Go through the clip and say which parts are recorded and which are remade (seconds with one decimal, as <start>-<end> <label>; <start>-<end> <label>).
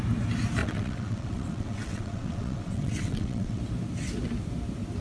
0.0-0.6 recorded; 0.6-3.6 remade; 3.6-5.0 recorded